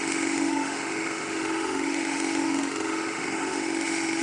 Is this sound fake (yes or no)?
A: yes